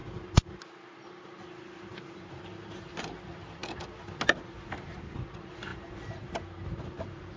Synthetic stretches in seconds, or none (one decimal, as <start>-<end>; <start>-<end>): none